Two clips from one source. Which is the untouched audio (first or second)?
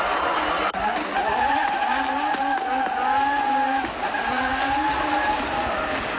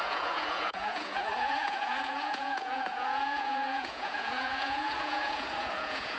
first